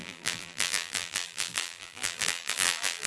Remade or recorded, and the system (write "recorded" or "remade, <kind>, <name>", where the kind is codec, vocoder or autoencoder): remade, vocoder, BigVGAN v2